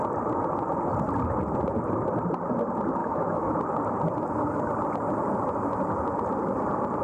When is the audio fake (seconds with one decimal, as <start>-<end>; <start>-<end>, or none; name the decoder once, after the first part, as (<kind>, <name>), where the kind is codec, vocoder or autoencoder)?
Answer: 3.0-3.6 (autoencoder, DAC-VAE)